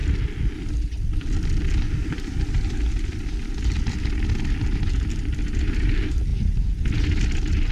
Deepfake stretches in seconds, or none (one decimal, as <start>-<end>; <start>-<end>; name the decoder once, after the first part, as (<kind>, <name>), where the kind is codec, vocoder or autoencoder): none